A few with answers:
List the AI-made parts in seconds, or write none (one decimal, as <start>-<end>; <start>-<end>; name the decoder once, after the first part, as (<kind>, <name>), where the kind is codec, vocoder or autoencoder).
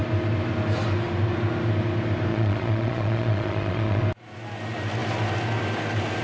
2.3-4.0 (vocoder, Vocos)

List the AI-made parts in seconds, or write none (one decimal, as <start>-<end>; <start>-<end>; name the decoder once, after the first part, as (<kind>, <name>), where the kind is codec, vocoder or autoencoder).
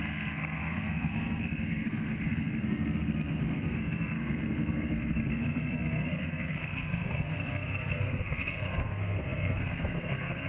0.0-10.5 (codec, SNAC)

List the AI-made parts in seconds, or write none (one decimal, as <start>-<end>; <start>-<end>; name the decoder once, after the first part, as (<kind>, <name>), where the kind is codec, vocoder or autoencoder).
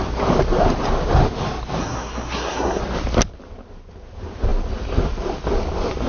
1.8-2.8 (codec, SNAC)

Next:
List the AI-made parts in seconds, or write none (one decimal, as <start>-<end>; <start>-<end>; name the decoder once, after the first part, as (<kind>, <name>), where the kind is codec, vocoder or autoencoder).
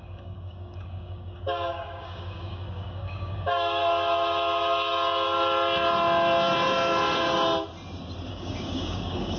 0.0-3.8 (codec, DAC); 8.3-9.4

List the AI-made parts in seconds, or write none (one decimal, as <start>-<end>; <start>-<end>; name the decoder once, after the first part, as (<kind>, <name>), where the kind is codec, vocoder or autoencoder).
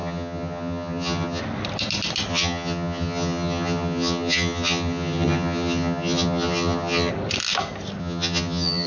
0.0-1.4 (vocoder, HiFi-GAN); 2.3-7.1; 8.0-8.9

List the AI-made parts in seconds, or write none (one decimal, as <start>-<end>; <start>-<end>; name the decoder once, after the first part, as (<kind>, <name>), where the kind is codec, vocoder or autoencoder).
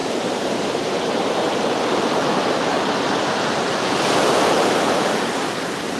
0.0-1.7 (vocoder, BigVGAN v2)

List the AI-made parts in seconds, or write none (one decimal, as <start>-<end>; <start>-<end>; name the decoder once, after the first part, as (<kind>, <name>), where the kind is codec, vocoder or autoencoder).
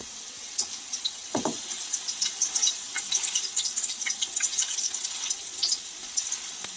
0.0-6.8 (vocoder, WaveNeXt)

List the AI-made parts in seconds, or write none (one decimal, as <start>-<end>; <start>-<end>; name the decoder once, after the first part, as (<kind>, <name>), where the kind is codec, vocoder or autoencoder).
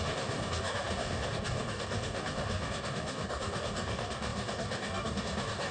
0.0-5.7 (codec, DAC)